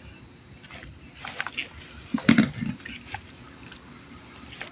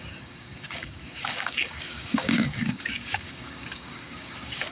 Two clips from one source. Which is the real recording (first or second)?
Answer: first